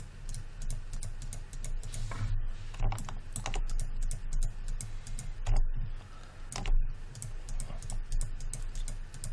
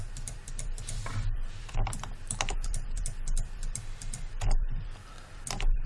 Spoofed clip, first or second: second